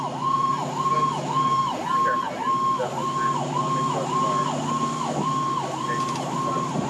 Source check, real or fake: real